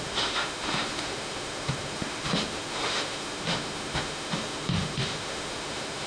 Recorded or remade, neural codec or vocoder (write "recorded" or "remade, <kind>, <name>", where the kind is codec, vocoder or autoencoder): remade, autoencoder, DAC-VAE